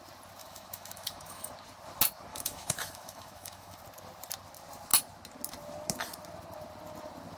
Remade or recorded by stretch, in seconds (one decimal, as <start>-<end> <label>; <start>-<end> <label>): 0.0-0.4 recorded; 0.4-1.5 remade; 1.5-2.3 recorded; 2.3-3.8 remade; 3.8-7.4 recorded